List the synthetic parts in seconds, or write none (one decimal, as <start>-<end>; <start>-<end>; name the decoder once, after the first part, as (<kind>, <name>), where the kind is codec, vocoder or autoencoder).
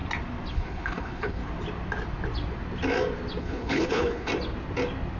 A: 0.5-1.4 (codec, HILCodec); 3.4-4.3